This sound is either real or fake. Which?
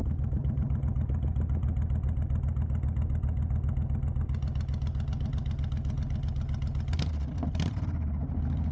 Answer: real